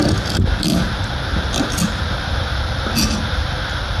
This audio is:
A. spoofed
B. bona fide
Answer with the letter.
B